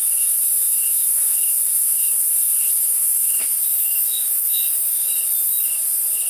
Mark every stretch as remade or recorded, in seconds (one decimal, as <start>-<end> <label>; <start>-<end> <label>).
0.0-5.1 remade; 5.1-6.3 recorded